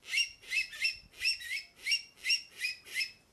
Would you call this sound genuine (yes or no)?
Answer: yes